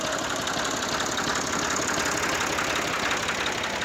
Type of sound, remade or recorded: recorded